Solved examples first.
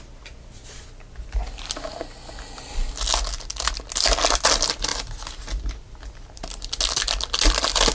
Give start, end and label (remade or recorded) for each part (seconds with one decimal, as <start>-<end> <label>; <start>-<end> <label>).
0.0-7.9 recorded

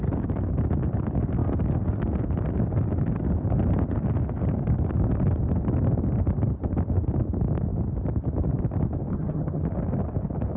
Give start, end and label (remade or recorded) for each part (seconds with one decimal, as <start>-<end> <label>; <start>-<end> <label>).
0.0-9.1 recorded; 9.1-9.6 remade; 9.6-10.6 recorded

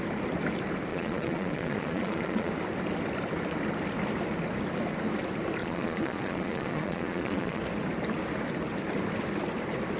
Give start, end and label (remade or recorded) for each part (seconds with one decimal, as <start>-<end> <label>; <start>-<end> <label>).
0.0-0.9 recorded; 0.9-2.5 remade; 2.5-5.6 recorded; 5.6-7.6 remade; 7.6-10.0 recorded

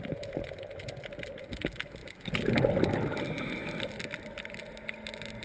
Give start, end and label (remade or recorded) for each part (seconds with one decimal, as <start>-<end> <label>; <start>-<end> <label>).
0.0-5.4 recorded